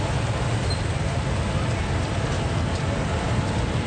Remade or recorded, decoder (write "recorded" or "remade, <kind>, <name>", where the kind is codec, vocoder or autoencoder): recorded